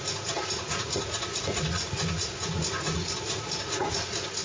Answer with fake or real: fake